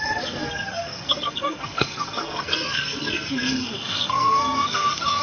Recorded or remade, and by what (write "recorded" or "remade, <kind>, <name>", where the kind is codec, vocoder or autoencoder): remade, codec, SNAC